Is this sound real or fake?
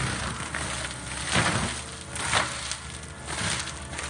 real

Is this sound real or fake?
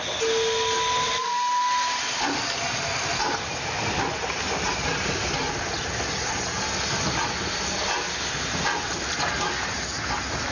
real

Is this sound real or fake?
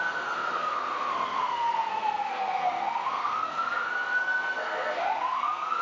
fake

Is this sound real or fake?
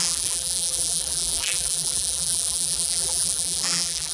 fake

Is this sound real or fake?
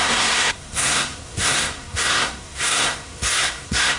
fake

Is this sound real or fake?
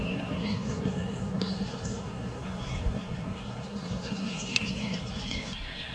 fake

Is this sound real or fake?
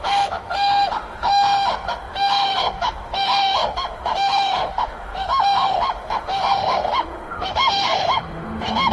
fake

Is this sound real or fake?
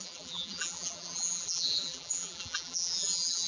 fake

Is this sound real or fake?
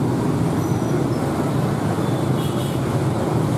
real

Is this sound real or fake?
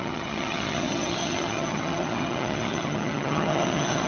fake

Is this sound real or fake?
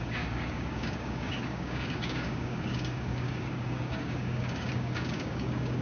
fake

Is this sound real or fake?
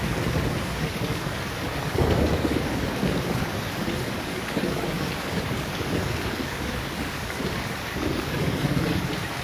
fake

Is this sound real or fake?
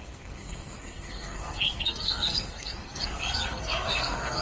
fake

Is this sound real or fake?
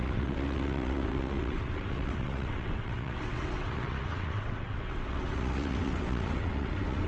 fake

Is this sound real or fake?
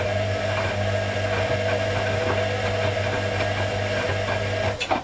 real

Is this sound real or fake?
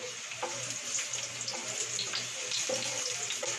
real